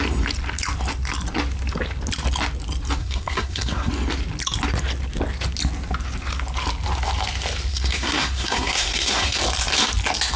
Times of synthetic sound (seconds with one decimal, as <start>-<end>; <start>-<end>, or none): 3.0-3.9; 7.7-9.4